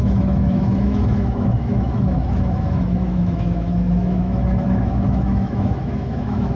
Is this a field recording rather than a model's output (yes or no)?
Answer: no